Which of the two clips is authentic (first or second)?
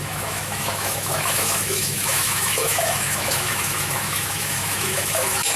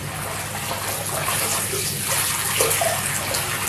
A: second